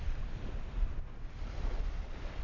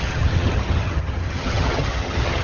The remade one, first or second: second